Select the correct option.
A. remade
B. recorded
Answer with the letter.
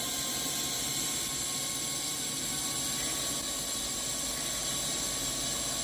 B